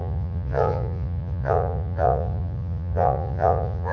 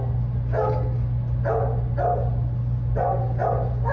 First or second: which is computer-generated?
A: first